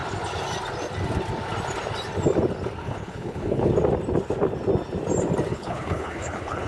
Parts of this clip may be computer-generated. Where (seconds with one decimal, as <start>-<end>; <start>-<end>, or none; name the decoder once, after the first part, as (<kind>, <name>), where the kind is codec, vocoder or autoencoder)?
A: 2.8-3.7 (codec, HILCodec); 5.5-6.7